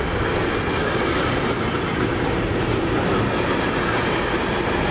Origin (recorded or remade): recorded